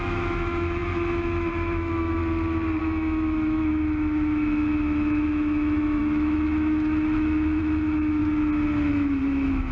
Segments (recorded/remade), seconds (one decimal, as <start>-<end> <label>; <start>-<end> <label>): 0.0-2.2 remade; 2.2-2.8 recorded; 2.8-8.2 remade; 8.2-8.9 recorded; 8.9-9.7 remade